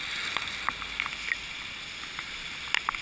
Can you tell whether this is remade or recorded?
recorded